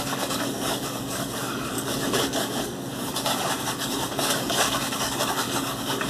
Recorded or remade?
remade